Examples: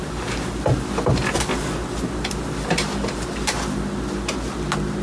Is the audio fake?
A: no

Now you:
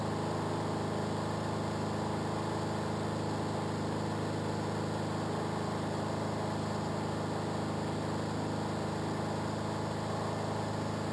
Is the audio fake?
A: no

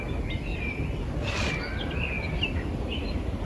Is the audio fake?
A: no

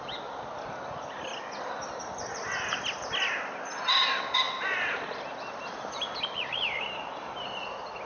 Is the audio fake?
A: no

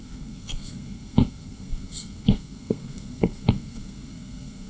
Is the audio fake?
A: yes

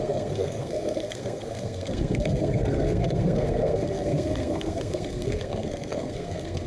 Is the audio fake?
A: yes